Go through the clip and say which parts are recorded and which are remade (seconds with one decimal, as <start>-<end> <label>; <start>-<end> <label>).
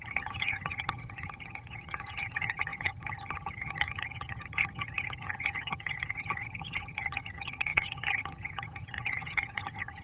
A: 0.0-10.0 remade